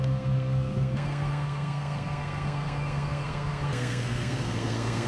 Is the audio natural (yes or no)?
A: no